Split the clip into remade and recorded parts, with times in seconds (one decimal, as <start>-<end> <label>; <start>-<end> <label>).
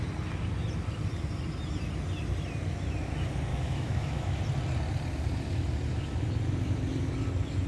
0.0-3.5 recorded; 3.5-4.4 remade; 4.4-7.7 recorded